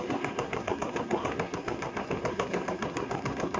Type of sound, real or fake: fake